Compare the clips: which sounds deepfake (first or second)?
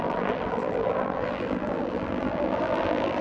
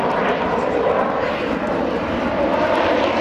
first